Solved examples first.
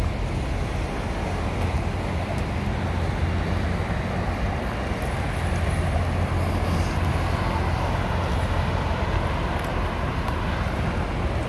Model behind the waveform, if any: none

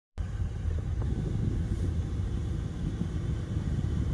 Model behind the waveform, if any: vocoder, BigVGAN v2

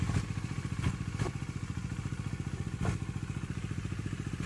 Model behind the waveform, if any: vocoder, BigVGAN v2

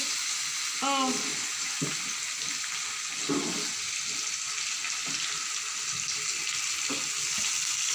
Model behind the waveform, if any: none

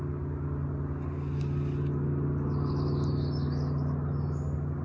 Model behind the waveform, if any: none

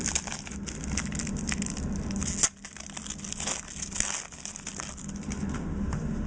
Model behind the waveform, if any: none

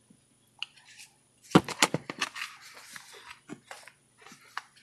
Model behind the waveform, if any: none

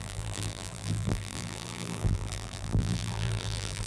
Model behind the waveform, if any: vocoder, BigVGAN v2